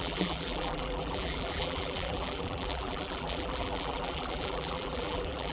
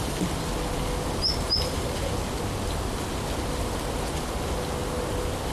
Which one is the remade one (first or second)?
first